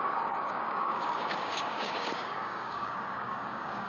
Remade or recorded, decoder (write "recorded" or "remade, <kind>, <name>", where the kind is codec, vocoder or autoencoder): remade, codec, DAC